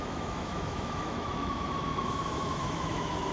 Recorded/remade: remade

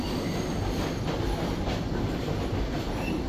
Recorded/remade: recorded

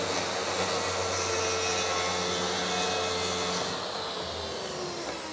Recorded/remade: recorded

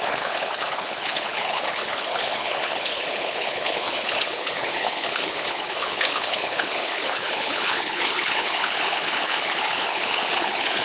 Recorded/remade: remade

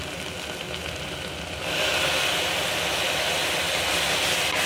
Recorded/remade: recorded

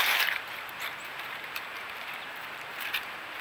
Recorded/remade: remade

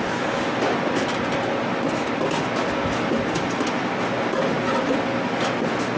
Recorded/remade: recorded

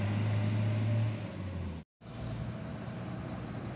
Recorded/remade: recorded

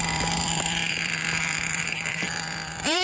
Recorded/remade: remade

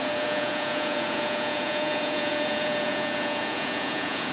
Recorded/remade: remade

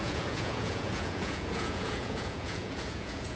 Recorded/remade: remade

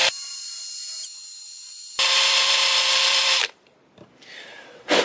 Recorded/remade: remade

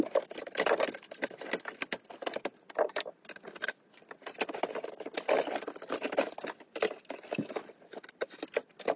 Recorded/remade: recorded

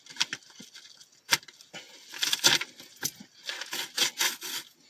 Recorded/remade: recorded